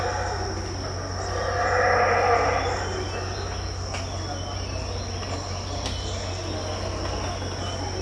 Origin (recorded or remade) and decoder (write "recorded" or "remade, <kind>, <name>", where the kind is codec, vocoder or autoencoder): recorded